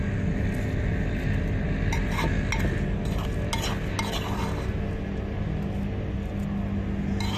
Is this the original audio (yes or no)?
yes